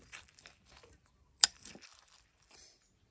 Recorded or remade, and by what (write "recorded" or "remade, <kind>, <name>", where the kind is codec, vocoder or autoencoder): remade, vocoder, BigVGAN v2